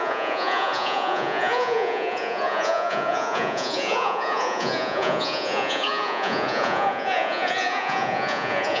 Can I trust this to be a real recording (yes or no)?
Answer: no